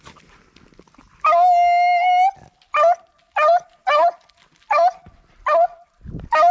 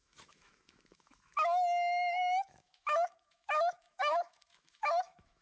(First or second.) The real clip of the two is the first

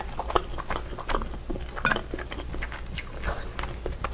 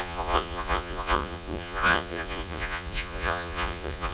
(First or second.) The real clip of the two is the first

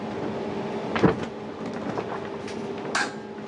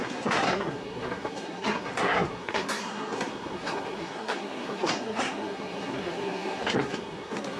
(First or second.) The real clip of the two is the first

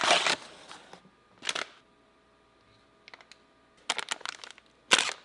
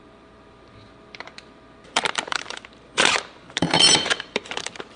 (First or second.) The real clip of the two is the first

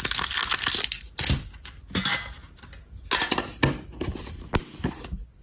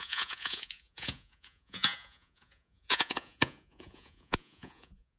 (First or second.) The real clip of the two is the first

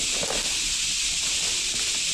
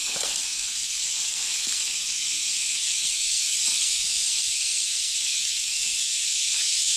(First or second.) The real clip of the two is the first